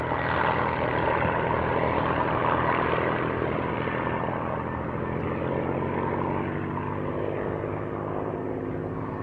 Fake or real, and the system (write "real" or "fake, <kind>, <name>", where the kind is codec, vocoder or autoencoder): real